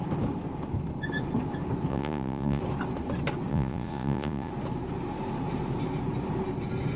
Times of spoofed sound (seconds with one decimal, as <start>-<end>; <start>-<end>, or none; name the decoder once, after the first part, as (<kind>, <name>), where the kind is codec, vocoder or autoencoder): 1.9-2.6 (vocoder, Vocos); 3.5-4.5